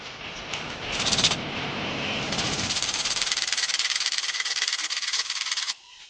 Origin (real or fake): fake